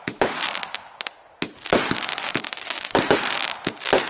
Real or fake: real